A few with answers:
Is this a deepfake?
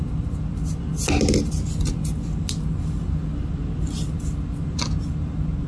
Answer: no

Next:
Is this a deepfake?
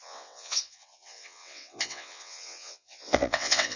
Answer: yes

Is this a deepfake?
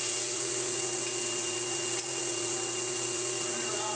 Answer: yes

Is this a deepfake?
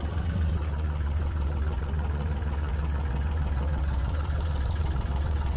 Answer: yes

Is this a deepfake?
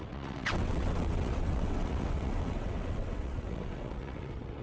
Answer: yes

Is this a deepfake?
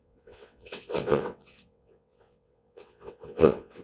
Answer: yes